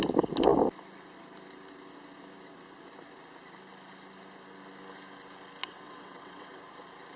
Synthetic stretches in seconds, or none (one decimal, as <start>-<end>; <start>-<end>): 5.6-6.6